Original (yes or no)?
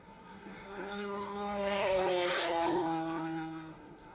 no